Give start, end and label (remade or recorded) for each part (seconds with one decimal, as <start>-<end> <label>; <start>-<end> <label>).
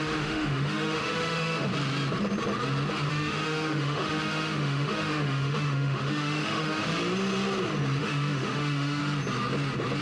0.0-1.7 remade; 1.7-3.1 recorded; 3.1-6.9 remade; 6.9-8.0 recorded; 8.0-9.0 remade; 9.0-10.0 recorded